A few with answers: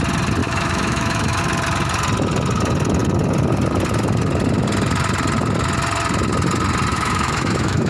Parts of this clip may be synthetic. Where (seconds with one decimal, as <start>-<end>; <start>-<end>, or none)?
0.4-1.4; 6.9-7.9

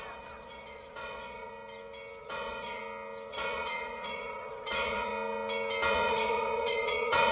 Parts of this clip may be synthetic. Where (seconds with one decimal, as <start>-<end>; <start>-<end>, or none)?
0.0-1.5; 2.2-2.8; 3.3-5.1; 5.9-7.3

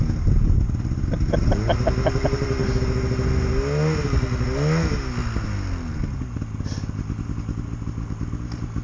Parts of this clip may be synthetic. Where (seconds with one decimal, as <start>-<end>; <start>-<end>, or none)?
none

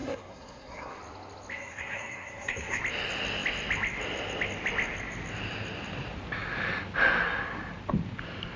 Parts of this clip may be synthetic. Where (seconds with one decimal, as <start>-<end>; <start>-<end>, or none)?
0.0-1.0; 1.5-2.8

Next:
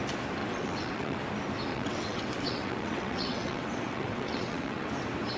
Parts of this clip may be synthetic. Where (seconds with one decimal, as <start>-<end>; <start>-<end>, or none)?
0.4-1.2; 1.7-4.9

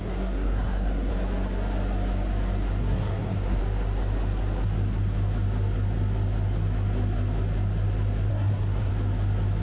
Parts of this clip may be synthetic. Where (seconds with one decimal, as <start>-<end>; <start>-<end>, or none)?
0.0-1.1; 2.8-3.6; 8.3-8.9

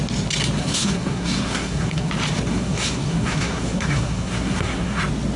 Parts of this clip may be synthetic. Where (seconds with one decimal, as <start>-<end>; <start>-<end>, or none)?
0.6-2.1; 2.5-5.0

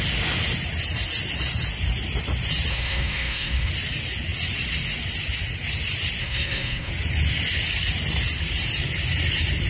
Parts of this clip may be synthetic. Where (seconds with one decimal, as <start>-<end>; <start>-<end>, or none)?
2.7-3.7; 6.2-6.9